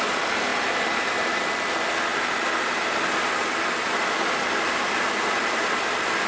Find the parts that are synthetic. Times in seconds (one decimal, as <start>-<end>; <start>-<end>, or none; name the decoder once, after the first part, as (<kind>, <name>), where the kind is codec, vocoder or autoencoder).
0.5-1.5 (vocoder, BigVGAN v2)